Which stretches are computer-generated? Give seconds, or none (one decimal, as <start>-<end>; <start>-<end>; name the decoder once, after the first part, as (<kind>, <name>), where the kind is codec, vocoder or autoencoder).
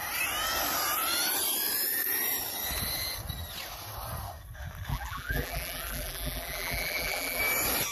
4.9-7.4 (vocoder, BigVGAN v2)